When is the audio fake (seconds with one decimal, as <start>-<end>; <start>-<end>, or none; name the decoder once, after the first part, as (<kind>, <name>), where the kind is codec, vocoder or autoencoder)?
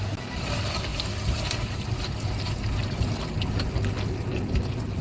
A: none